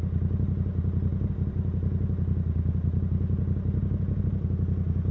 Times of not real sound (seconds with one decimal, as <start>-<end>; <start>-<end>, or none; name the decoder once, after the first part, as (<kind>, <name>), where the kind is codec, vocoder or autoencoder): none